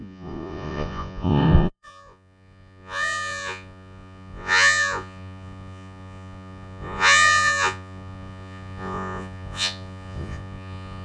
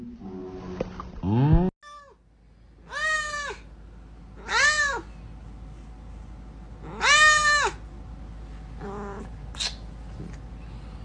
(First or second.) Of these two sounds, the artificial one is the first